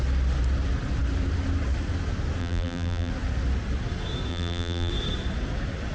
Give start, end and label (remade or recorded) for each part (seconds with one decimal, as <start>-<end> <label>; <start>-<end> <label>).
0.0-2.4 recorded; 2.4-3.1 remade; 3.1-4.3 recorded; 4.3-4.9 remade; 4.9-5.9 recorded